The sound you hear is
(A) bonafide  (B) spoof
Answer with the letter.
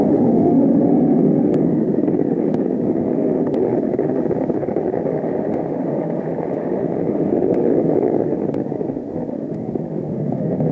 B